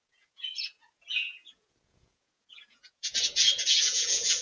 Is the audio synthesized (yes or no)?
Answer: yes